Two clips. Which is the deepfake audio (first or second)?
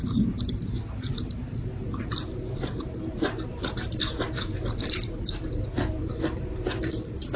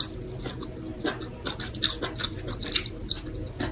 first